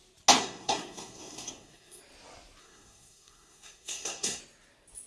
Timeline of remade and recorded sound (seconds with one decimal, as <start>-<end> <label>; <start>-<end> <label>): 0.0-0.4 recorded; 0.4-2.0 remade; 2.0-2.6 recorded; 2.6-4.4 remade; 4.4-5.1 recorded

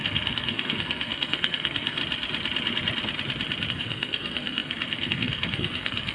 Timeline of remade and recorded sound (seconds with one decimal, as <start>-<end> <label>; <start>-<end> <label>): 0.0-2.0 remade; 2.0-3.7 recorded; 3.7-6.1 remade

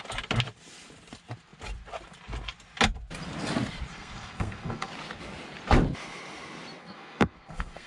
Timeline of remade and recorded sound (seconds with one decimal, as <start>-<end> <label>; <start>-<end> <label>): 0.0-3.9 recorded; 3.9-4.9 remade; 4.9-6.8 recorded; 6.8-7.9 remade

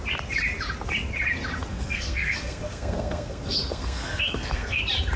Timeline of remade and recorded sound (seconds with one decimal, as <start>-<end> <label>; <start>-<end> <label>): 0.0-1.7 recorded; 1.7-4.8 remade; 4.8-5.2 recorded

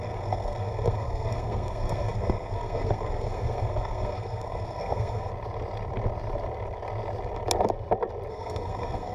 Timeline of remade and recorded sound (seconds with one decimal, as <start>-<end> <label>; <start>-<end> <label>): 0.0-5.3 remade; 5.3-8.3 recorded; 8.3-9.1 remade

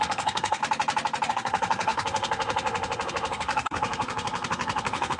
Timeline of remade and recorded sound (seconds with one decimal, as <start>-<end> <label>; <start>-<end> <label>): 0.0-0.6 remade; 0.6-1.3 recorded; 1.3-5.2 remade

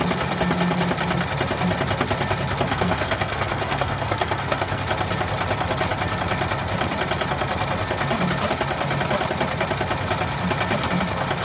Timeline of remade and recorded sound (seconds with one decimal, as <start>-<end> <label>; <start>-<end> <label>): 0.0-2.7 recorded; 2.7-4.8 remade; 4.8-11.4 recorded